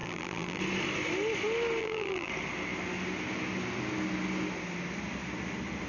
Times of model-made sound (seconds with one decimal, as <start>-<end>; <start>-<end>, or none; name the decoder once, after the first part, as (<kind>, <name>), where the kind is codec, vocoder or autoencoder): 0.0-0.6 (vocoder, BigVGAN v2); 1.8-2.3